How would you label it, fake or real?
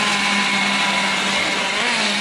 real